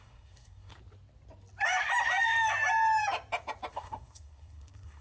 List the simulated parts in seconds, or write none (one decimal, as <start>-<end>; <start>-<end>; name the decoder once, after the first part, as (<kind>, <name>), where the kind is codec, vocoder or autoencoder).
0.0-0.7 (codec, SNAC); 3.7-5.0